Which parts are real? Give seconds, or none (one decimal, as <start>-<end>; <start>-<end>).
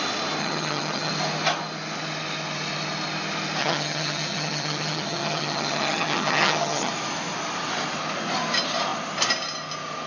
0.0-0.4; 1.1-3.6; 6.9-10.1